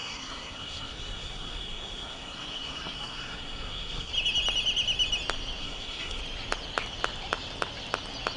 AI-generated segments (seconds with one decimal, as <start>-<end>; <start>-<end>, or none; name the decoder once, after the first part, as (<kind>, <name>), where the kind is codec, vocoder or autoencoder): 0.0-4.1 (codec, SNAC); 5.6-6.2